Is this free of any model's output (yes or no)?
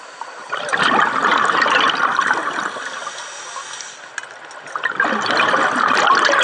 yes